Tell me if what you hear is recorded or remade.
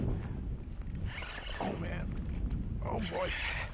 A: recorded